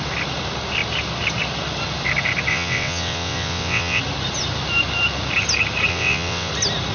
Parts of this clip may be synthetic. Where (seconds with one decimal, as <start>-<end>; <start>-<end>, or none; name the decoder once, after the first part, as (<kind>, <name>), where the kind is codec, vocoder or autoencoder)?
2.5-4.0 (vocoder, WaveNeXt); 5.9-6.5